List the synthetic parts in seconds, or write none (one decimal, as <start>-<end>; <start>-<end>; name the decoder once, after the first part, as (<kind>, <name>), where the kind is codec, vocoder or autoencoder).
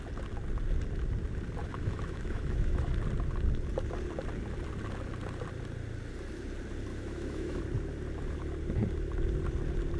1.6-2.9 (autoencoder, DAC-VAE); 6.9-7.6